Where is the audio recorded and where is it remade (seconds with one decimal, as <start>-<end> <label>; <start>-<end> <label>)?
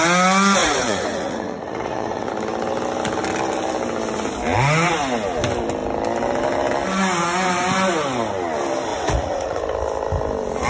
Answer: 0.0-0.6 recorded; 0.6-2.3 remade; 2.3-8.9 recorded; 8.9-9.6 remade; 9.6-10.7 recorded